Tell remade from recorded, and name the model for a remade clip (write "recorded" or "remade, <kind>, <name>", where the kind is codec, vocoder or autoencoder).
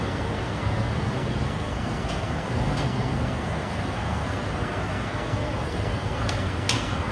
remade, codec, SNAC